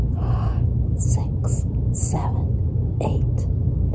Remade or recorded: recorded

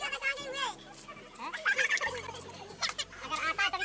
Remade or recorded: recorded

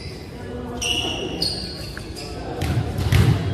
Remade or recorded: recorded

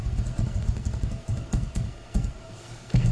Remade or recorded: remade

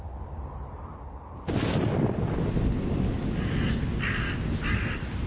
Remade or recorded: recorded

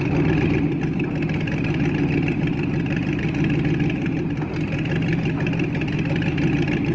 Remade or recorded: recorded